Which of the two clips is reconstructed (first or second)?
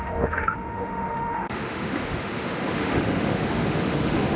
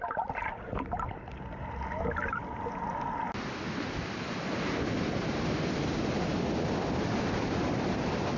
first